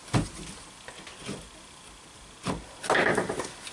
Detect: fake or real real